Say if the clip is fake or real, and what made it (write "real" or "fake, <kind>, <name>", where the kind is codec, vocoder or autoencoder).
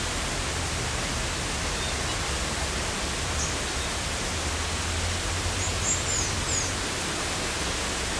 real